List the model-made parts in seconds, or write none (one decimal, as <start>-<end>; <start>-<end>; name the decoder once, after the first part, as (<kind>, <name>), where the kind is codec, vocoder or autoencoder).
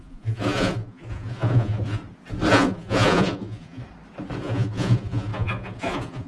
0.0-2.0 (vocoder, Vocos); 2.5-3.8; 4.4-6.3